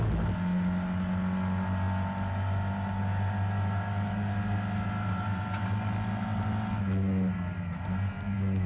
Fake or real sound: real